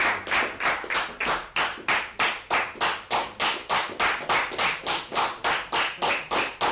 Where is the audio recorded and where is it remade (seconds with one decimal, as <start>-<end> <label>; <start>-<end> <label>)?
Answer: 0.0-1.2 recorded; 1.2-4.8 remade; 4.8-6.7 recorded